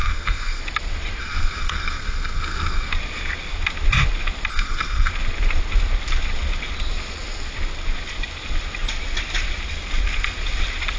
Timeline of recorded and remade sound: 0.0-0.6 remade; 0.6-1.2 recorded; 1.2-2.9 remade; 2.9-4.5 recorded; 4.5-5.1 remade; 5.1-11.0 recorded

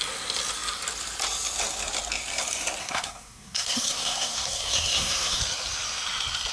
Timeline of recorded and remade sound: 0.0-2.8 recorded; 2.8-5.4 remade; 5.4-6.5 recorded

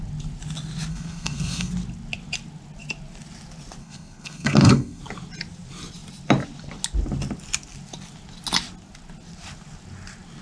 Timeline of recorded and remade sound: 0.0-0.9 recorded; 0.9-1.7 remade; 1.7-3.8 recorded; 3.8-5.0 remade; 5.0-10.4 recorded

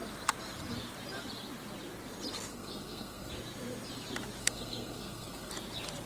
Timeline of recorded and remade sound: 0.0-2.5 recorded; 2.5-3.3 remade; 3.3-4.4 recorded; 4.4-5.5 remade; 5.5-6.1 recorded